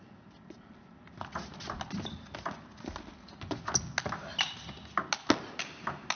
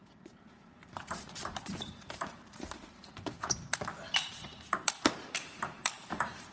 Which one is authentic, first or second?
first